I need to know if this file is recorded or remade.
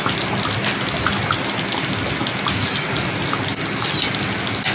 recorded